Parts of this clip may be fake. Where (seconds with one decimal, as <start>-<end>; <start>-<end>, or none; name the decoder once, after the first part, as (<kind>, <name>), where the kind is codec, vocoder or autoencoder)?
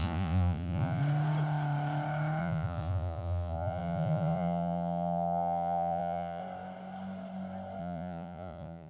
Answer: 0.0-1.0 (vocoder, Vocos); 2.4-6.4; 7.8-8.9